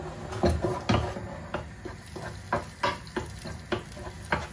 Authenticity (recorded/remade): recorded